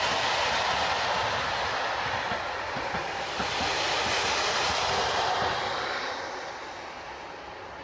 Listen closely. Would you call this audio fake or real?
real